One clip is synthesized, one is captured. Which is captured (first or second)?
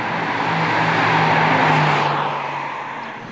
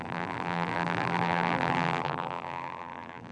first